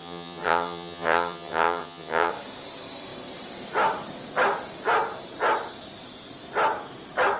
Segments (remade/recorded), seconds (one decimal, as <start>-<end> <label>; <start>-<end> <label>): 0.0-2.3 remade; 2.3-7.4 recorded